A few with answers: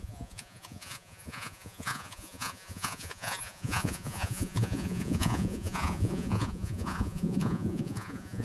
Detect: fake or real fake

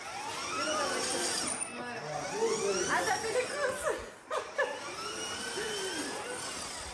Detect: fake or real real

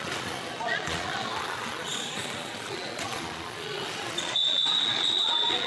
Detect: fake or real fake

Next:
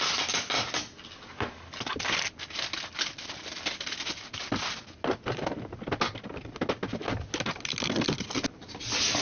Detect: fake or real real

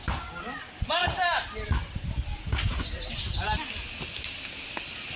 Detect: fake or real real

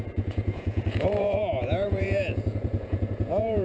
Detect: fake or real fake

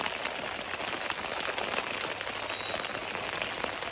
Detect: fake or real real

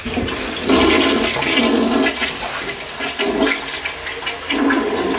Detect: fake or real real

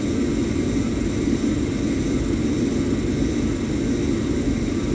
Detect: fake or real real